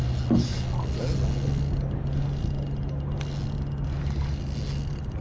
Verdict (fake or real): real